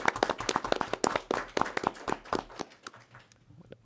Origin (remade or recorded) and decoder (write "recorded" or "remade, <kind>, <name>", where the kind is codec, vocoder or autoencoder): recorded